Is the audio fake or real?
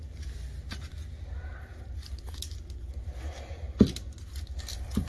real